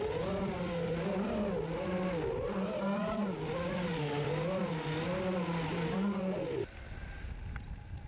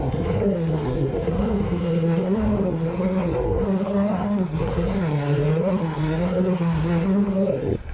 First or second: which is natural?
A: first